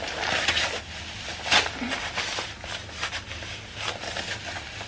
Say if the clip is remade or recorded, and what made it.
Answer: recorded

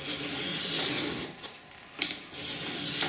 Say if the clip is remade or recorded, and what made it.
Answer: recorded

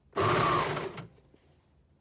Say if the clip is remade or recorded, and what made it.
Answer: recorded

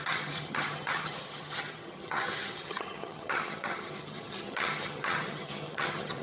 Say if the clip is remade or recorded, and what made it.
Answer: remade, vocoder, HiFi-GAN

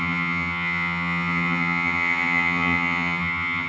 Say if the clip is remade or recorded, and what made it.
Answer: remade, vocoder, HiFi-GAN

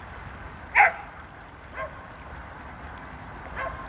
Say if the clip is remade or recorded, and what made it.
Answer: recorded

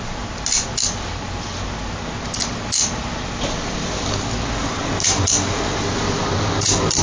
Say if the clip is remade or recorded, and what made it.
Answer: recorded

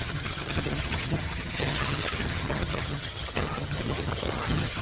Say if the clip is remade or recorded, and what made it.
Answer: remade, vocoder, HiFi-GAN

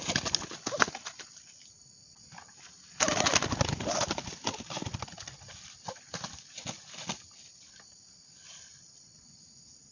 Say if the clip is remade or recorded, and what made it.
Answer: recorded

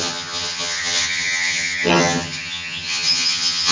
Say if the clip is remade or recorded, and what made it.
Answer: remade, vocoder, HiFi-GAN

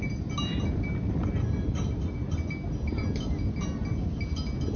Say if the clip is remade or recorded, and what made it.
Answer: recorded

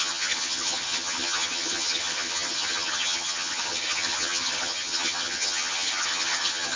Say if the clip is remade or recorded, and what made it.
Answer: remade, vocoder, HiFi-GAN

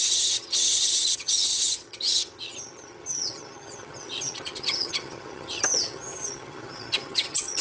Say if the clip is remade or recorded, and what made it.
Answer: remade, vocoder, HiFi-GAN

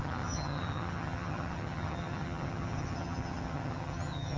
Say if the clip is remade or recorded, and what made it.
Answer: remade, vocoder, HiFi-GAN